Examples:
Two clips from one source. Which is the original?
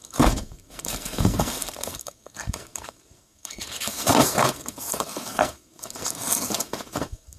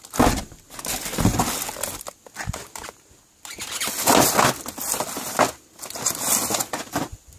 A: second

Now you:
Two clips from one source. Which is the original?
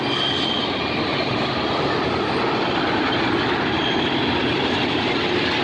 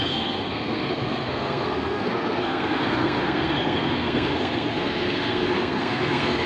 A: first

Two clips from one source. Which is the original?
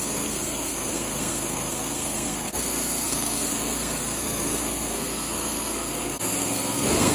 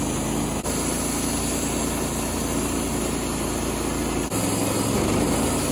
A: second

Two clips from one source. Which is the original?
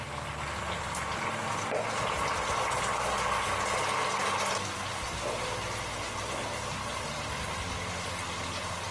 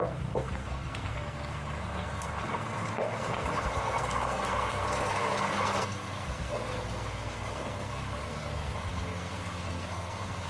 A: first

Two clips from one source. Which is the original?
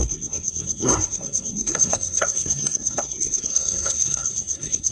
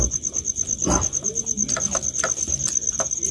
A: second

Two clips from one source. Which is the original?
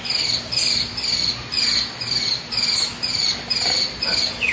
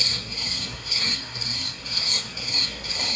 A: first